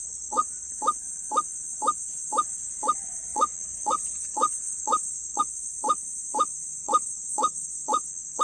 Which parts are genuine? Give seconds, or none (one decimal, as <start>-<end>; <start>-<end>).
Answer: 0.8-3.3; 5.4-6.8